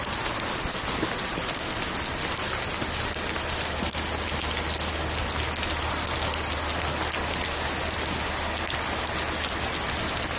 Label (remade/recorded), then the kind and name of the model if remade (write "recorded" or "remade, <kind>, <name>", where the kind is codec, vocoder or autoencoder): recorded